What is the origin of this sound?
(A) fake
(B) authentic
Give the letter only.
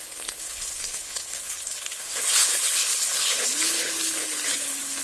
A